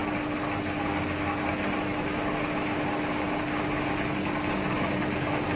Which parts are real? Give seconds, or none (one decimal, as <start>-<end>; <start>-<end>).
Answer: 0.0-5.6